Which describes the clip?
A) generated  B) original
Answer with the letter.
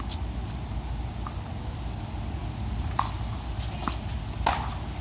B